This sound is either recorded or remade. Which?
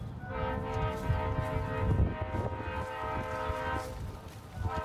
recorded